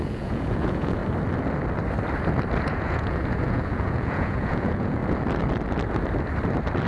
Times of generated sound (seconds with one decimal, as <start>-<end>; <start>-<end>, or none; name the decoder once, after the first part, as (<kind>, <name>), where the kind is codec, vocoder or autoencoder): 0.0-1.0 (vocoder, Vocos); 2.6-5.0